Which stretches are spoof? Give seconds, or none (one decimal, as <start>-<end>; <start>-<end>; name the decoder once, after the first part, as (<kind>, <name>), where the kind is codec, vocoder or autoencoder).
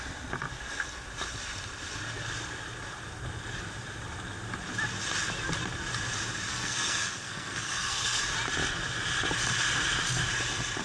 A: 6.5-8.2 (codec, SNAC)